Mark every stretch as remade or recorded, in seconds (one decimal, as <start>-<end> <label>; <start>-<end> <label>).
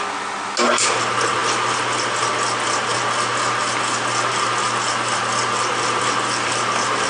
0.0-7.1 recorded